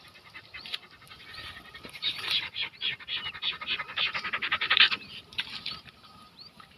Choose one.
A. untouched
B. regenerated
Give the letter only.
B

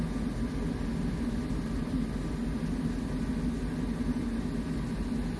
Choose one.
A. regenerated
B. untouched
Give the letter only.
B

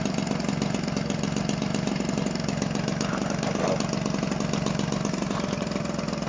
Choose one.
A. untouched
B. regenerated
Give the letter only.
A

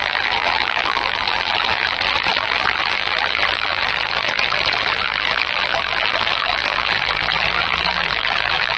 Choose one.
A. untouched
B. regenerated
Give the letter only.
B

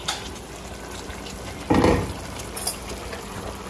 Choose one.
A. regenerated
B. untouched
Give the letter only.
B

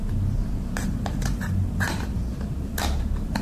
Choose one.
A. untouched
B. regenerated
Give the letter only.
B